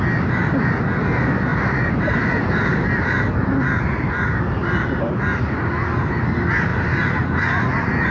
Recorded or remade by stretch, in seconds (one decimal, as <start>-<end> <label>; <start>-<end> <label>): 0.0-1.5 recorded; 1.5-2.0 remade; 2.0-2.7 recorded; 2.7-5.7 remade; 5.7-8.1 recorded